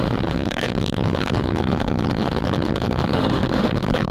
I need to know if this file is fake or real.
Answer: fake